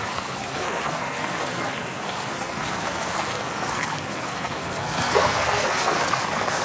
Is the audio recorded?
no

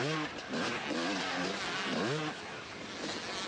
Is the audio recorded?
yes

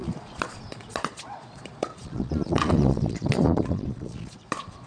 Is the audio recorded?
no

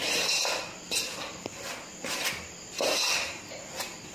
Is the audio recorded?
yes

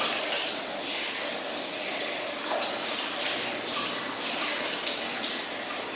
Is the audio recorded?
yes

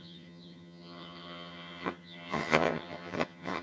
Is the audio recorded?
no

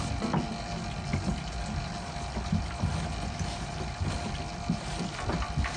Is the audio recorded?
yes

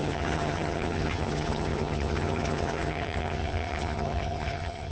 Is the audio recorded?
no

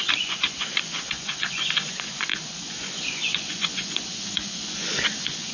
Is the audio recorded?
no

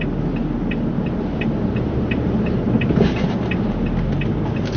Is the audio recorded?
yes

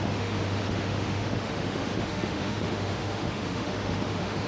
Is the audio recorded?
no